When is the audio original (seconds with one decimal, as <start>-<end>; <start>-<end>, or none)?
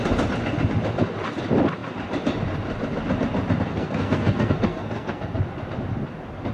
0.0-3.7; 5.4-6.5